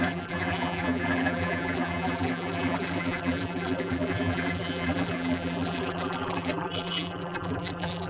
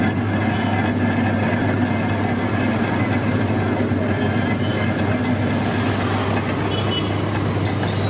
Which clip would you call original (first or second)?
second